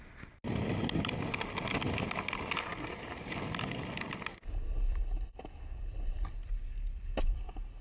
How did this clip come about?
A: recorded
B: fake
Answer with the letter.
A